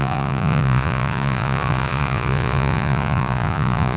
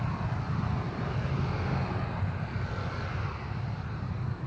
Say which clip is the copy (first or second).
first